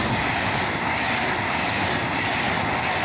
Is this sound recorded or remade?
recorded